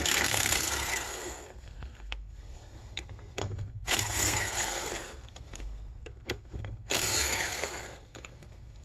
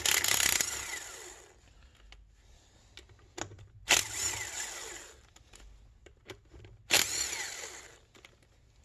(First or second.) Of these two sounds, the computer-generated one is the first